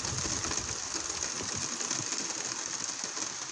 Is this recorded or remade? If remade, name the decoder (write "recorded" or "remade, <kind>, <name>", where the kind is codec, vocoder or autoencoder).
recorded